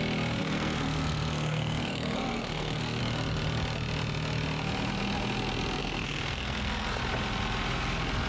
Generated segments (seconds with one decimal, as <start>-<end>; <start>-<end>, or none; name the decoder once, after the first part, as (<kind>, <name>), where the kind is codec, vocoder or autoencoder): 0.4-3.0 (codec, SNAC); 5.8-7.0